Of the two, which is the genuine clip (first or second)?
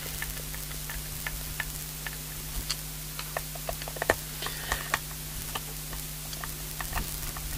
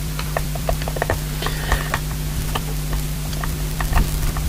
first